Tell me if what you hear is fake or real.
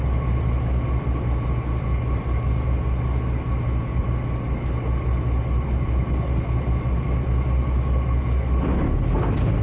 real